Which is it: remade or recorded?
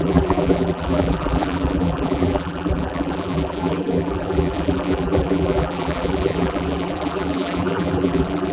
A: remade